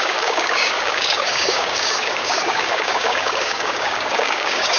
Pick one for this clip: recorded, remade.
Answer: remade